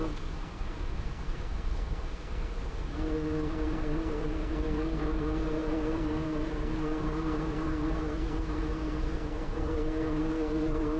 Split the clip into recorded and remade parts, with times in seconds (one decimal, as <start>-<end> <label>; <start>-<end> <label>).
0.0-11.0 remade